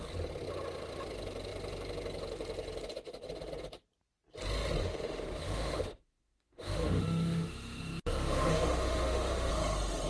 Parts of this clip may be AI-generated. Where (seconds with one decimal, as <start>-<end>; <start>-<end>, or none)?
4.8-9.5